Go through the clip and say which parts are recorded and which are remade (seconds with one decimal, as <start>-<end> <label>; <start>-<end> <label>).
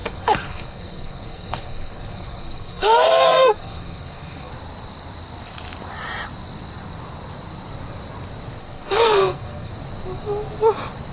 0.0-4.5 remade; 4.5-8.6 recorded; 8.6-9.7 remade; 9.7-11.1 recorded